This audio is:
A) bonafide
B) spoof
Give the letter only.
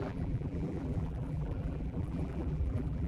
B